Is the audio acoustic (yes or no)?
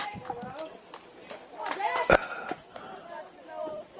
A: yes